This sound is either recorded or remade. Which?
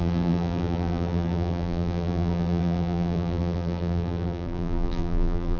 remade